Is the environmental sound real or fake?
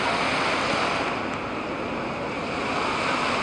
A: real